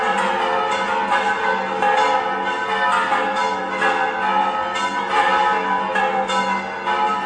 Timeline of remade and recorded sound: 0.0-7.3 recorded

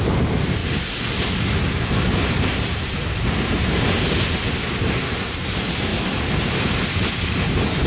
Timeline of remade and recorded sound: 0.0-0.6 remade; 0.6-1.7 recorded; 1.7-5.9 remade; 5.9-6.4 recorded; 6.4-7.9 remade

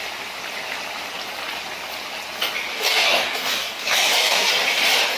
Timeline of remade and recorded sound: 0.0-2.7 recorded; 2.7-4.5 remade; 4.5-5.2 recorded

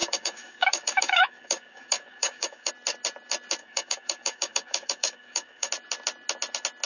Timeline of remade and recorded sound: 0.0-2.7 remade; 2.7-3.6 recorded; 3.6-5.7 remade; 5.7-6.9 recorded